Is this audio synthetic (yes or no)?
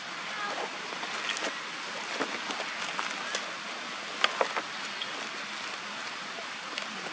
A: no